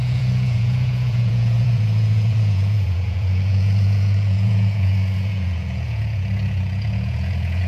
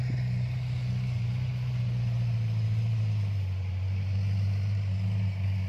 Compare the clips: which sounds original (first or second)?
second